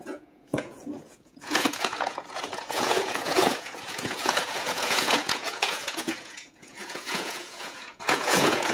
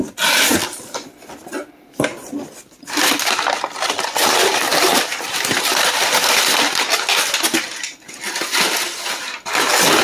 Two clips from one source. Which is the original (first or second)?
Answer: second